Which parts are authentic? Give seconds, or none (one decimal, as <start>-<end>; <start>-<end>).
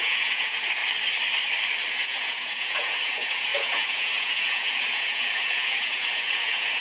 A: 0.8-1.9